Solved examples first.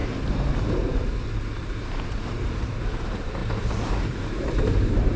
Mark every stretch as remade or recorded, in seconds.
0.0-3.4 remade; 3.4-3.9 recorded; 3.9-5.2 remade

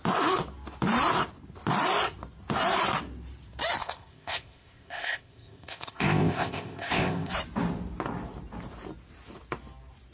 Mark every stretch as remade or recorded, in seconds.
0.0-3.8 recorded; 3.8-7.3 remade; 7.3-10.1 recorded